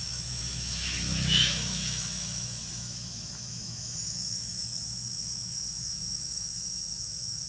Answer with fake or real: fake